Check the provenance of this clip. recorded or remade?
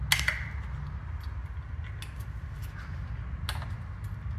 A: recorded